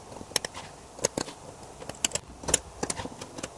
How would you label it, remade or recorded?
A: recorded